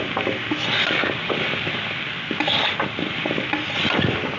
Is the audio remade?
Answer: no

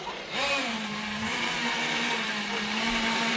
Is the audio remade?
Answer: yes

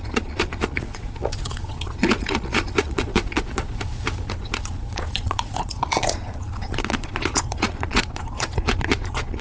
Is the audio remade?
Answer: yes